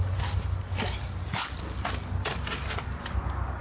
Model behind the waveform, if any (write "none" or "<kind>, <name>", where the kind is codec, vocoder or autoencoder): none